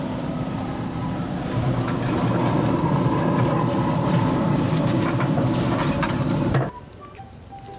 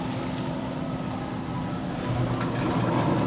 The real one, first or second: second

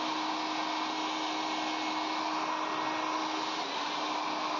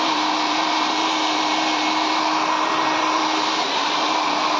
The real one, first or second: first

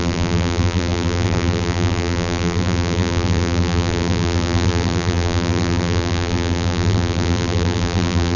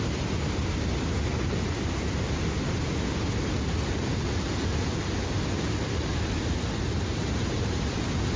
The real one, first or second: second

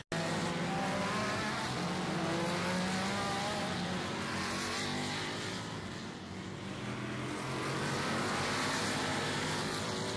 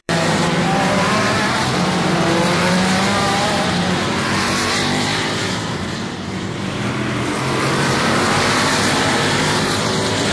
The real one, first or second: first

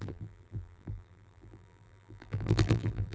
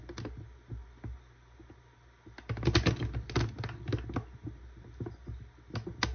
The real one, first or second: second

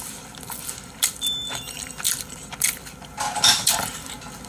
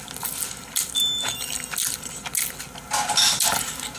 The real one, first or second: second